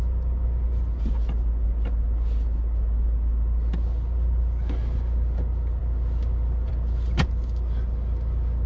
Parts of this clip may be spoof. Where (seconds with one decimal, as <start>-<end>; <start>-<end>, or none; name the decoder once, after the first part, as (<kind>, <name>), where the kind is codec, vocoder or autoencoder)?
none